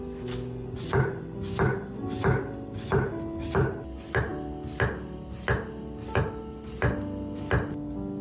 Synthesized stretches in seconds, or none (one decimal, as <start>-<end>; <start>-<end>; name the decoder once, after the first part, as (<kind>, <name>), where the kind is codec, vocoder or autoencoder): none